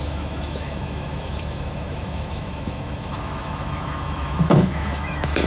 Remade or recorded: remade